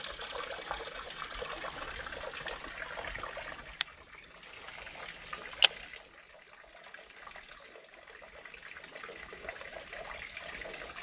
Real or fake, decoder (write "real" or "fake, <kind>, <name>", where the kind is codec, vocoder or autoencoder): real